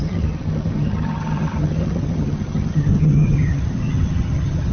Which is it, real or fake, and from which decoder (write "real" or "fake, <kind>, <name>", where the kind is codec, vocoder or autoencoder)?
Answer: fake, vocoder, HiFi-GAN